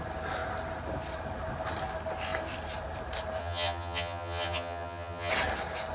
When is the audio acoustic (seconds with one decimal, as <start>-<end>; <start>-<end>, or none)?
0.0-3.4; 5.3-5.9